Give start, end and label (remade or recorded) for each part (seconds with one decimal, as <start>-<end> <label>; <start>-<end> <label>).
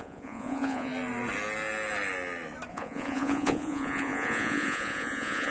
0.0-0.9 remade; 0.9-2.7 recorded; 2.7-5.5 remade